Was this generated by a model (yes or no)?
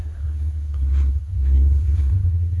yes